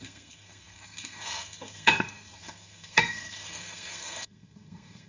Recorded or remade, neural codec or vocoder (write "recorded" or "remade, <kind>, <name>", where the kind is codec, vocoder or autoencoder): remade, codec, SNAC